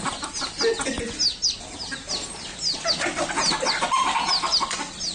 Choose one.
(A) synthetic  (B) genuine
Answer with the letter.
B